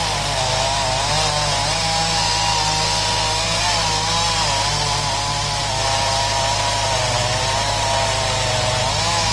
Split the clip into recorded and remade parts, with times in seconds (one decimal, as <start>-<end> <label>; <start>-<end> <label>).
0.0-9.3 recorded